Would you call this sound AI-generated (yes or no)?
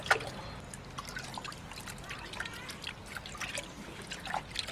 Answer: no